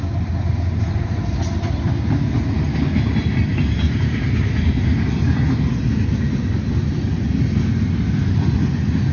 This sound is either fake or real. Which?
real